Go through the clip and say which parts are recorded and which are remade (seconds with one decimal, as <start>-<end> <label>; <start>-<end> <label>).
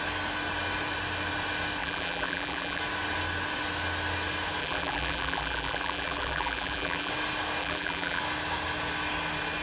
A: 0.0-1.8 recorded; 1.8-2.8 remade; 2.8-4.6 recorded; 4.6-7.1 remade; 7.1-7.6 recorded; 7.6-8.2 remade; 8.2-9.6 recorded